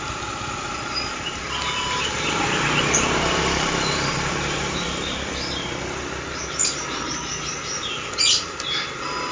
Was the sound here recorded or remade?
remade